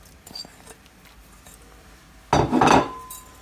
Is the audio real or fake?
real